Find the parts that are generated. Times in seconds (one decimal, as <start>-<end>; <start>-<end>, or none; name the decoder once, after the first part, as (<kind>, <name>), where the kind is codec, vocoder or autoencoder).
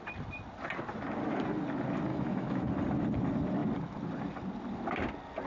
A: 2.1-2.6 (autoencoder, DAC-VAE)